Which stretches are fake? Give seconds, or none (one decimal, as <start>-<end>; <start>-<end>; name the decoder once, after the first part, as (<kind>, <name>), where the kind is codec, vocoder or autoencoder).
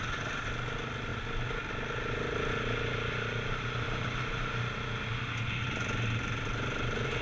none